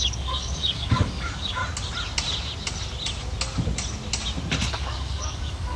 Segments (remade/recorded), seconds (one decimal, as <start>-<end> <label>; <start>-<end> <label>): 0.0-1.6 remade; 1.6-4.7 recorded; 4.7-5.8 remade